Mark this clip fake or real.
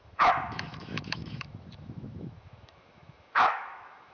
fake